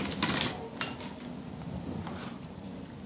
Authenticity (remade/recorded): recorded